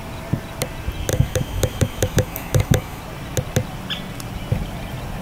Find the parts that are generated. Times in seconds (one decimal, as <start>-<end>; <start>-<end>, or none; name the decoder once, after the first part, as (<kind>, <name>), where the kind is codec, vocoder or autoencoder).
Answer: 1.1-3.0 (autoencoder, DAC-VAE)